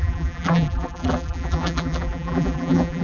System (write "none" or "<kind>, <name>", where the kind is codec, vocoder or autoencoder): vocoder, BigVGAN v2